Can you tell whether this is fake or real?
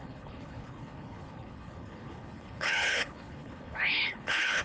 fake